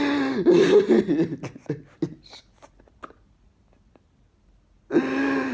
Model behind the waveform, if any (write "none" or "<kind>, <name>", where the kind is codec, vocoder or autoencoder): none